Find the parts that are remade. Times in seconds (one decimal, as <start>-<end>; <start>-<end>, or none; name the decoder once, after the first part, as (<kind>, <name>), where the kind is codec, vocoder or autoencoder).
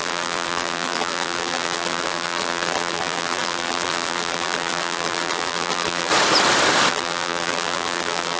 0.0-6.1 (vocoder, BigVGAN v2); 6.9-8.4